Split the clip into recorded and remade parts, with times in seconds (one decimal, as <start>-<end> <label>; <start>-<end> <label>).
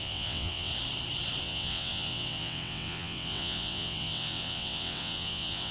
0.0-0.7 remade; 0.7-1.4 recorded; 1.4-5.7 remade